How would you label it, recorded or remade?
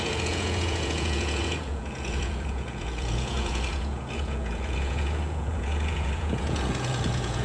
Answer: remade